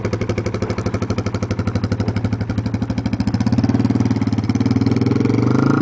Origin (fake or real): real